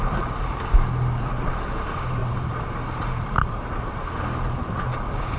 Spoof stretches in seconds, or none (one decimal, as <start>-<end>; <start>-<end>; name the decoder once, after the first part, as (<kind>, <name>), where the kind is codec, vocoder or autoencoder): 2.2-4.0 (vocoder, BigVGAN v2)